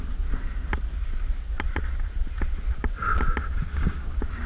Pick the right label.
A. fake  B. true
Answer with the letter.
B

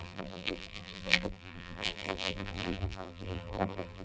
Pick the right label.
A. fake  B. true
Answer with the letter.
A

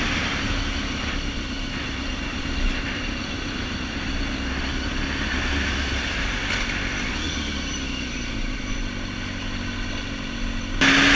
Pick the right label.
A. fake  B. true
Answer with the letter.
B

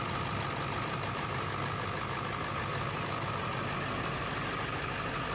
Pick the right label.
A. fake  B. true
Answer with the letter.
B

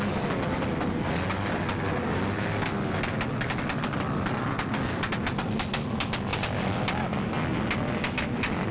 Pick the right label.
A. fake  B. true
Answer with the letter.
B